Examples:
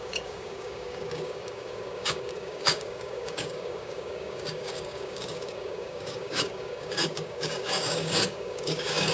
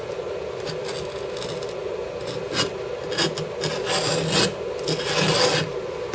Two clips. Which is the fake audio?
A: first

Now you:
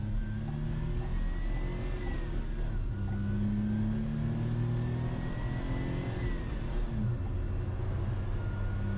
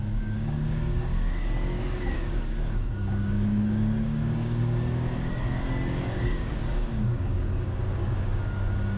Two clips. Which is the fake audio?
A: second